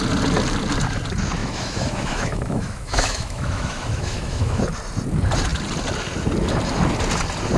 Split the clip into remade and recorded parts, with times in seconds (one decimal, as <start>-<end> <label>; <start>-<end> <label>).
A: 0.0-1.4 recorded; 1.4-4.6 remade; 4.6-7.6 recorded